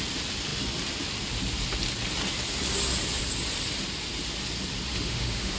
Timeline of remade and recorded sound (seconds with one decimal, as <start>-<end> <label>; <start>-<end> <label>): 0.0-4.9 recorded; 4.9-5.6 remade